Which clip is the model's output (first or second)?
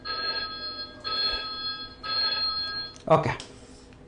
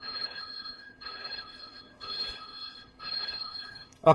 second